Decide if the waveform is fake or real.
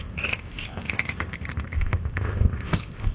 fake